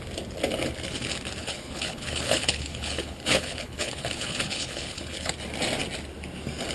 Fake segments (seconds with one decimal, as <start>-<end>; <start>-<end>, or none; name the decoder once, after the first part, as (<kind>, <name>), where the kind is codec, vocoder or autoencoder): 1.4-5.3 (codec, HILCodec)